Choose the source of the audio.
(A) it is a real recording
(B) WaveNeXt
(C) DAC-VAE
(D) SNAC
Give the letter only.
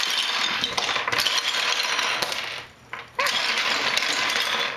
A